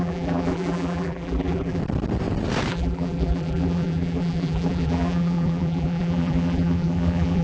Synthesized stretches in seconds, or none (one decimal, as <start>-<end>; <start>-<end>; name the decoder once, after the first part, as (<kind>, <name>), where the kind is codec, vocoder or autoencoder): 0.0-1.8 (vocoder, BigVGAN v2); 2.7-7.4